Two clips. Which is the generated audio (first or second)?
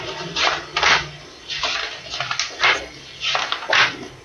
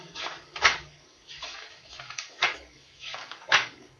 second